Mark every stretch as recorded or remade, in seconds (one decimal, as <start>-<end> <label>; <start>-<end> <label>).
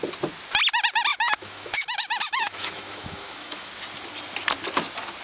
0.0-1.1 recorded; 1.1-3.7 remade; 3.7-5.2 recorded